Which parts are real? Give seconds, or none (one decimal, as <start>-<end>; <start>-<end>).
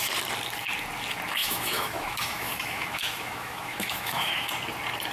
0.0-1.4; 4.5-5.1